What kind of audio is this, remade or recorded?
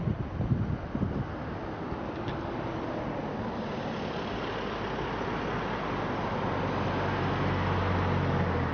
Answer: recorded